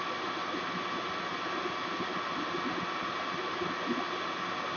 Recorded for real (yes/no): yes